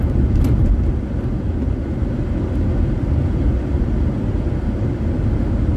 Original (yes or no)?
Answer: yes